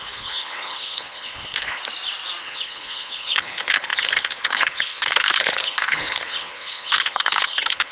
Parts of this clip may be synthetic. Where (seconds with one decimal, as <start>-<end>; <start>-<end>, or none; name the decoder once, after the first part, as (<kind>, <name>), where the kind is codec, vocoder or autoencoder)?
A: 0.0-1.8 (codec, HILCodec); 2.4-7.9